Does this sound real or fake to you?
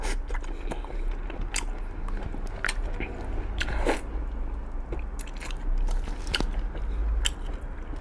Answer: real